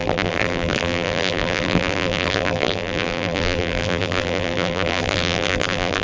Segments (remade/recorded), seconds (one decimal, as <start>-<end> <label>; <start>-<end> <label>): 0.0-6.0 remade